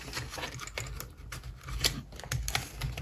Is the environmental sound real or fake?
real